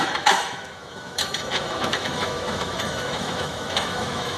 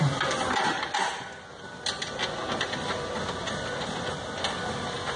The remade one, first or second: first